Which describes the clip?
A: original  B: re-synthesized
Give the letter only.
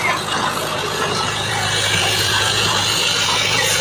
B